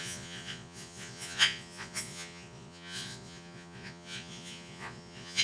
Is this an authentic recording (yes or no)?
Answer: no